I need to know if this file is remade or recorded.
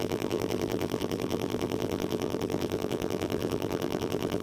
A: remade